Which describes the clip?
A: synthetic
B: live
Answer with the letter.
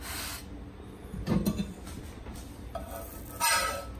B